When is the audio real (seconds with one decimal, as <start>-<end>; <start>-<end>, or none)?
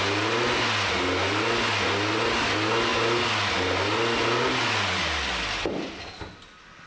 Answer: 0.0-6.9